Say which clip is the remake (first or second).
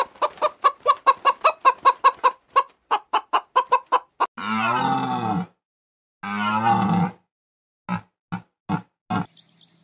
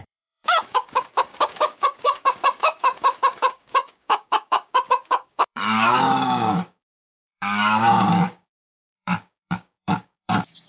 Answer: second